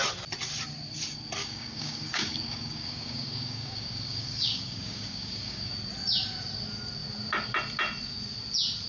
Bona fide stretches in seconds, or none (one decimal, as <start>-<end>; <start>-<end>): 0.0-1.4; 5.7-8.9